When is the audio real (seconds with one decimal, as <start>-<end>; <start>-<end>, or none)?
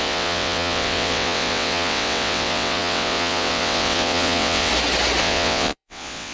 4.7-5.2